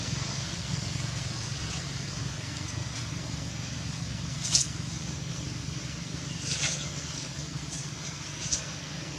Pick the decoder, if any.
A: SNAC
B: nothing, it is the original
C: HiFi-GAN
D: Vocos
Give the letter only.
A